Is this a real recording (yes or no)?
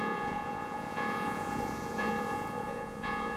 no